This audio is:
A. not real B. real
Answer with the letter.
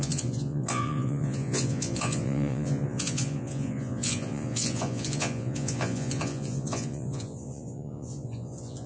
A